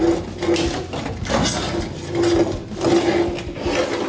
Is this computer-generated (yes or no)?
no